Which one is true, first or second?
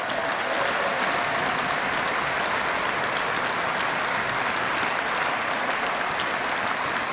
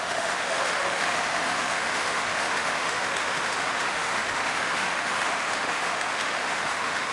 first